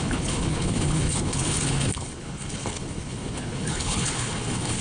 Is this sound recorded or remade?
remade